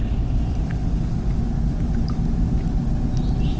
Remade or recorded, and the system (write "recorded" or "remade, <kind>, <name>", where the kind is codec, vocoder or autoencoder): recorded